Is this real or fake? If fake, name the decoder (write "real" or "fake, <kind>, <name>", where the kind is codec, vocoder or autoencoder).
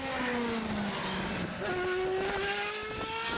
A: real